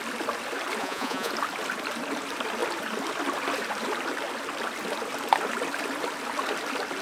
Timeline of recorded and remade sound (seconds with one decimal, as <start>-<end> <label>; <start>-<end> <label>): 0.0-0.8 recorded; 0.8-1.3 remade; 1.3-7.0 recorded